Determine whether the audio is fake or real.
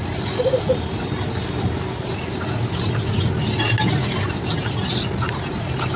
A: real